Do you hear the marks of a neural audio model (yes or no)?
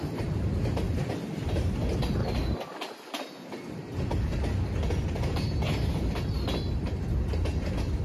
no